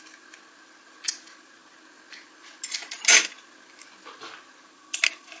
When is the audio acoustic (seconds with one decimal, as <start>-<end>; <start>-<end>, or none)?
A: 0.0-5.4